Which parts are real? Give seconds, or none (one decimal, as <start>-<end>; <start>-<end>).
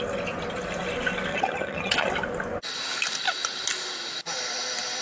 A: 0.0-1.3; 2.1-5.0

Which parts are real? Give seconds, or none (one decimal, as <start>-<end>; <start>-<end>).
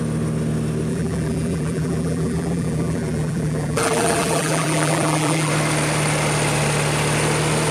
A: 0.0-0.9; 5.5-7.7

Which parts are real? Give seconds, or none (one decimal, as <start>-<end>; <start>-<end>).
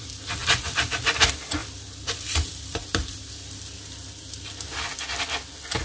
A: 0.0-0.4; 0.9-1.6; 3.3-5.8